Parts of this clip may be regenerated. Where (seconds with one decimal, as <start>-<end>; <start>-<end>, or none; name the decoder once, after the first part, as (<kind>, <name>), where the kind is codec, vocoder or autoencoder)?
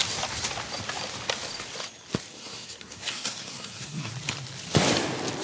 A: 2.3-4.1 (codec, SNAC)